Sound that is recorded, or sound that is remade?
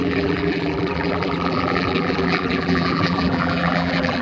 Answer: remade